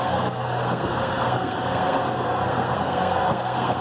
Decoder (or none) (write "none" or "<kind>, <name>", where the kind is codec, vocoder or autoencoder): codec, SNAC